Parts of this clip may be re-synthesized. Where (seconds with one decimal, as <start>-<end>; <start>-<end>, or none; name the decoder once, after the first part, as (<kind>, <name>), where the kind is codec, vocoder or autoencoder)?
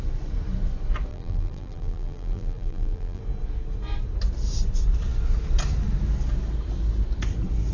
1.1-3.2 (vocoder, BigVGAN v2)